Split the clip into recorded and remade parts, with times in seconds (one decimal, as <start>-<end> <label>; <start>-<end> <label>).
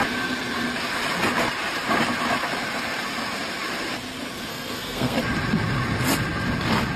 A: 0.0-4.5 recorded; 4.5-5.2 remade; 5.2-7.0 recorded